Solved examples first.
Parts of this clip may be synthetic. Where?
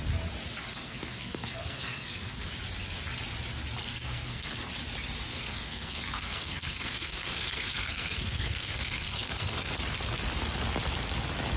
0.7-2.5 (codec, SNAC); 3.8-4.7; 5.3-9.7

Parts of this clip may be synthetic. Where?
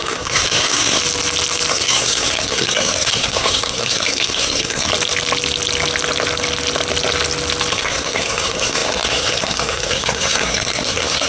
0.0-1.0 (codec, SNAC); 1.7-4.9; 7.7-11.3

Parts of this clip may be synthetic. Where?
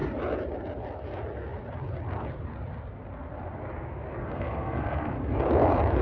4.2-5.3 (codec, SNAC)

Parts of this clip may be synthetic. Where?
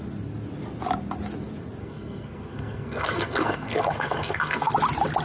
1.8-4.7 (codec, SNAC)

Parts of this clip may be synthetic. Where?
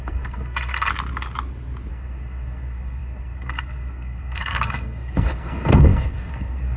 0.0-0.9 (codec, SNAC); 1.9-6.8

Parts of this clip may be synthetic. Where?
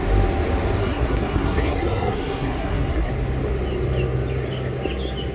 0.8-3.1 (codec, SNAC)